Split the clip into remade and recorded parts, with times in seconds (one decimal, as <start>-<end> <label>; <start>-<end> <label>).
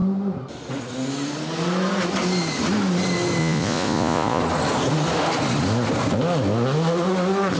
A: 0.0-3.4 recorded; 3.4-4.4 remade; 4.4-7.6 recorded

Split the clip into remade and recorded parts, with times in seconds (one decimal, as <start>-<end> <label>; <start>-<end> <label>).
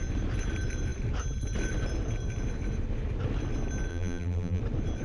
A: 0.0-3.9 recorded; 3.9-4.6 remade; 4.6-5.0 recorded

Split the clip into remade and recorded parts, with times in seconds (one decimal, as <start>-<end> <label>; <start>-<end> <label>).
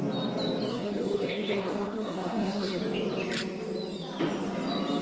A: 0.0-0.7 recorded; 0.7-2.8 remade; 2.8-5.0 recorded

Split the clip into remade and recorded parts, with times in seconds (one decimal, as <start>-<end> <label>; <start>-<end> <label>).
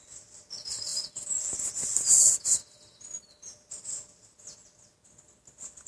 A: 0.0-5.9 recorded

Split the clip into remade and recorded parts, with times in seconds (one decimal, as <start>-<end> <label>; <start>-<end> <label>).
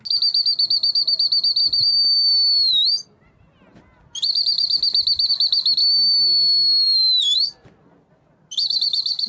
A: 0.0-9.3 recorded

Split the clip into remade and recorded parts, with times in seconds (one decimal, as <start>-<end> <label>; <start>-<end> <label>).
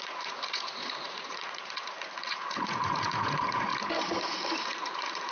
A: 0.0-3.7 remade; 3.7-4.2 recorded; 4.2-5.3 remade